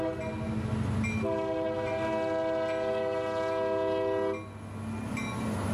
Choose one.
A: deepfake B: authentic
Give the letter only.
B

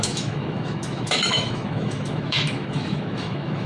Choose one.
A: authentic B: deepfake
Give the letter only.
B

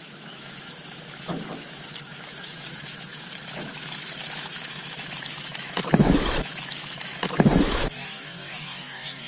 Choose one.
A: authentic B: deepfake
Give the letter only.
B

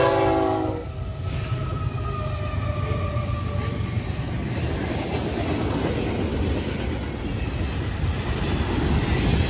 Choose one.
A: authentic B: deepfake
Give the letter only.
A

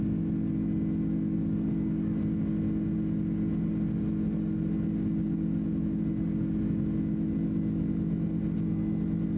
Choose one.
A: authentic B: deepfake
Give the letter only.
A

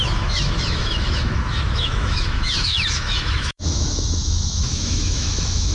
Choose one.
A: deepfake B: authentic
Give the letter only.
A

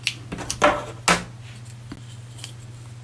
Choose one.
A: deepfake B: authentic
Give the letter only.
B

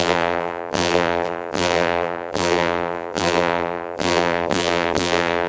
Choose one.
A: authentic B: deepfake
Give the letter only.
B